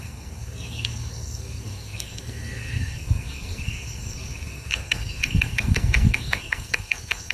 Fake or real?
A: fake